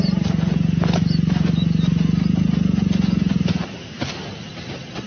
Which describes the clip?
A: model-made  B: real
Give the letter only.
B